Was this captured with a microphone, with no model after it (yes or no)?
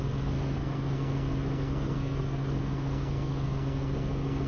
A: no